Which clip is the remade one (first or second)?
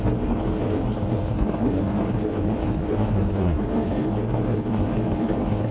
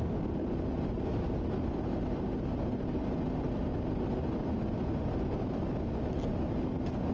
first